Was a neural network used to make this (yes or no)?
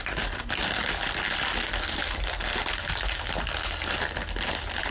no